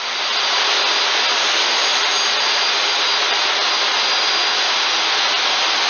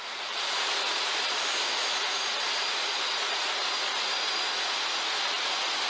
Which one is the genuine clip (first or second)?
first